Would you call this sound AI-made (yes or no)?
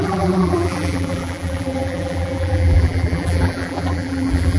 yes